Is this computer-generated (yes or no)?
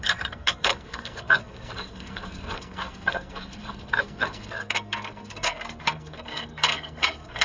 yes